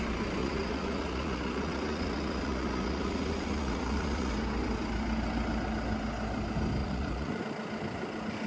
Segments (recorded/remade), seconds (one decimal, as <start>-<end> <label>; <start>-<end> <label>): 0.0-0.4 recorded; 0.4-4.3 remade; 4.3-6.8 recorded; 6.8-7.4 remade; 7.4-8.5 recorded